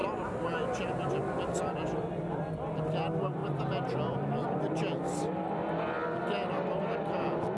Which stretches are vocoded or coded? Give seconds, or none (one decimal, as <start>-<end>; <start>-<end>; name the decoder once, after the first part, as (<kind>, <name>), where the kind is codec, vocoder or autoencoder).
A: none

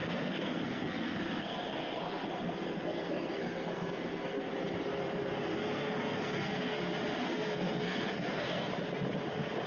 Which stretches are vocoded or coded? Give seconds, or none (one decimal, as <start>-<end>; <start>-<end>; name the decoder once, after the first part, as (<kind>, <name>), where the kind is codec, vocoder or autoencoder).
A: 0.0-4.5 (codec, SNAC); 5.5-6.8; 7.2-8.7

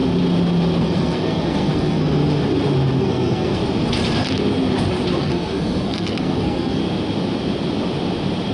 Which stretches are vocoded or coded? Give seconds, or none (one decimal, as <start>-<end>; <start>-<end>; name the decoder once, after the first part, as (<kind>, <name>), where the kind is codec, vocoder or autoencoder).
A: 0.8-2.2 (codec, SNAC); 3.0-3.6; 5.2-6.8

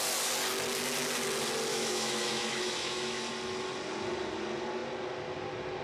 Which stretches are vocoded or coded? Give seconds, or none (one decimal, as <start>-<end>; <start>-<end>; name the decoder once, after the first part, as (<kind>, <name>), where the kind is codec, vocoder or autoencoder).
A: 1.7-3.3 (autoencoder, DAC-VAE)

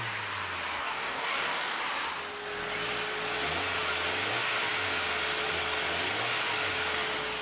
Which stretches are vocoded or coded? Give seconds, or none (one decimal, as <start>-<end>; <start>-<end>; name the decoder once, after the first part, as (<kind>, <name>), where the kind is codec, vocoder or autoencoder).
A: 0.8-1.8 (codec, DAC)

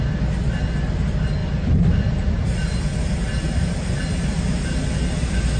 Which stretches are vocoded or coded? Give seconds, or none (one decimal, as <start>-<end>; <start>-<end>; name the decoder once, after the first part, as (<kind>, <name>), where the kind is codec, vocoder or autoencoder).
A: none

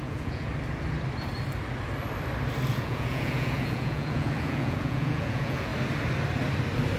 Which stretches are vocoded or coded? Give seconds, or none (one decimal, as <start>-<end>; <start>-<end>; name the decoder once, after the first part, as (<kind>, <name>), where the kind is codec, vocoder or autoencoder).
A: 0.0-0.5 (vocoder, Vocos); 2.7-5.7

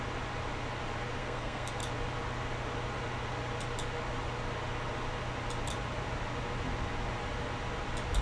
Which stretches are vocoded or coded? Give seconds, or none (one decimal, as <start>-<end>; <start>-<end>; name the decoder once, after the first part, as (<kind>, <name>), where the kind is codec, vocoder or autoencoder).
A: 1.2-1.7 (codec, SNAC)